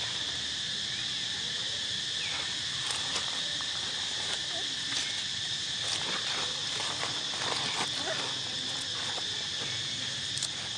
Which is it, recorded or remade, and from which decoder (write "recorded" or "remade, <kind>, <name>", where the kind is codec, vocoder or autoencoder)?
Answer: recorded